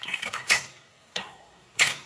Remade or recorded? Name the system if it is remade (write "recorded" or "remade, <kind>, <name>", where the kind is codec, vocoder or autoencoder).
remade, codec, SNAC